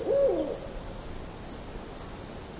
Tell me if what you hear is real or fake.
real